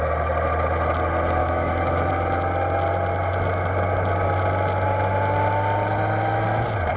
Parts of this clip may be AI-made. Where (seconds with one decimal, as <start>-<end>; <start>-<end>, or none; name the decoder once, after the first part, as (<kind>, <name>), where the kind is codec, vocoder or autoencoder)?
1.4-2.1 (autoencoder, DAC-VAE)